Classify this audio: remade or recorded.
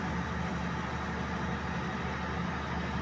recorded